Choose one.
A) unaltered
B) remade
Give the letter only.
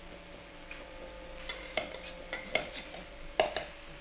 A